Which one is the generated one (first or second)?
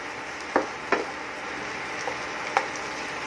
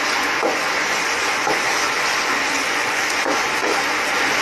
second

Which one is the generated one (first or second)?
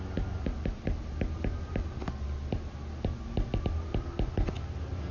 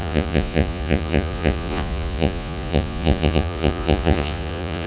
second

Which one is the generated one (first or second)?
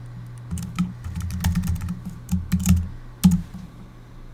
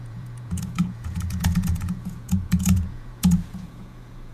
second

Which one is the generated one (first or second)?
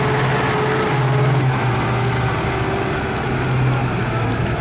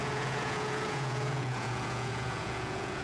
second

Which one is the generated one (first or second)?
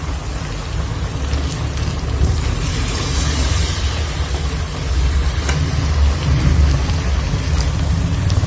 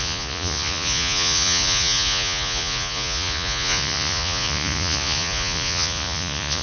second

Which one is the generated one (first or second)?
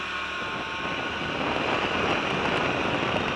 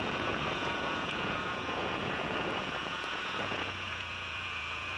second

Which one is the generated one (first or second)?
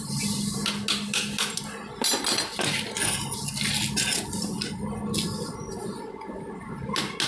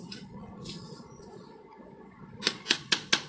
second